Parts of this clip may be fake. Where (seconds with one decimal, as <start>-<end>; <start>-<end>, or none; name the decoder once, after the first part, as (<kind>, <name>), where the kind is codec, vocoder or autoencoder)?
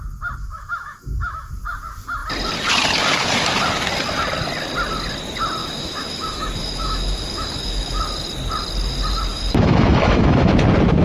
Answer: 0.4-1.5 (autoencoder, DAC-VAE); 5.6-8.0; 9.3-10.5